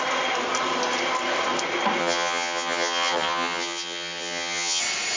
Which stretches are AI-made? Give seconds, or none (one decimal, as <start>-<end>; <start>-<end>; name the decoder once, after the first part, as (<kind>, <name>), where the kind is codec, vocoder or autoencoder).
2.0-4.8 (vocoder, HiFi-GAN)